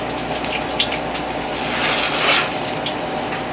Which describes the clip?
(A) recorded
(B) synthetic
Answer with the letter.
A